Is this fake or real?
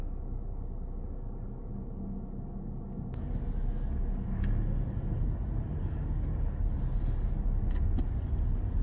real